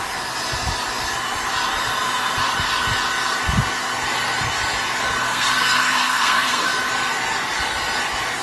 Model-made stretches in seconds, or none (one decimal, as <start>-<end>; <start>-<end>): 5.3-6.7